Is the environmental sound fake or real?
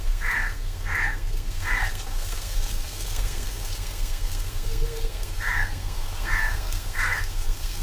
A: fake